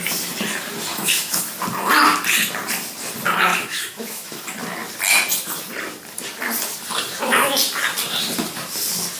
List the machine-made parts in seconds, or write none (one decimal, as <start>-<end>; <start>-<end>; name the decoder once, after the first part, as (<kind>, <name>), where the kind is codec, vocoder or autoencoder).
0.9-1.5 (autoencoder, DAC-VAE); 3.5-4.4